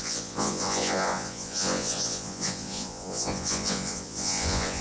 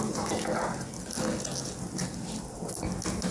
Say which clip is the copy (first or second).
first